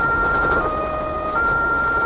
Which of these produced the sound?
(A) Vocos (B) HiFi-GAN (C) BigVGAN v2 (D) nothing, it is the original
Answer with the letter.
D